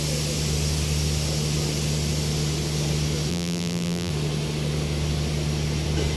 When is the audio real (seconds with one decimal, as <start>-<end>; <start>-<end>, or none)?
0.0-3.3; 4.1-6.2